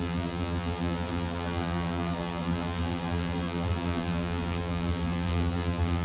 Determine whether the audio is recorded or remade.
remade